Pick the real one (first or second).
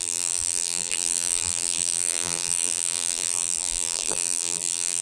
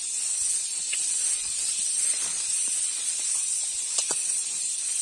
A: second